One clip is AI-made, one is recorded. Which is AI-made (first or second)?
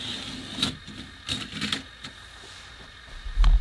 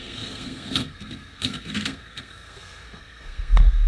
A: second